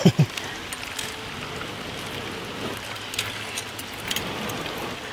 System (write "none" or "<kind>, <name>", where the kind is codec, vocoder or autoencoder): none